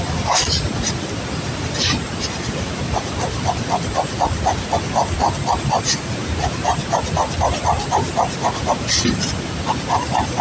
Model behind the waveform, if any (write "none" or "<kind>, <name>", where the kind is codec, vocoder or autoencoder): none